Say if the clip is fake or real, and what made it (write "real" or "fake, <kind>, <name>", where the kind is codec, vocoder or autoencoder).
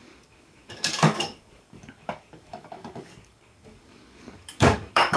fake, codec, DAC